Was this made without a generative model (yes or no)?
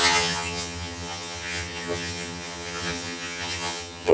no